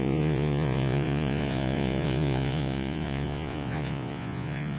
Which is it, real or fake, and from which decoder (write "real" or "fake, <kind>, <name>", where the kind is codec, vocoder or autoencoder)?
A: fake, vocoder, Vocos